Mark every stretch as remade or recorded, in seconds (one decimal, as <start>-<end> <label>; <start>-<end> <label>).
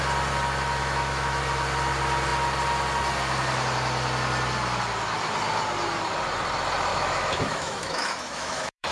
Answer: 0.0-0.8 recorded; 0.8-1.4 remade; 1.4-6.9 recorded; 6.9-8.9 remade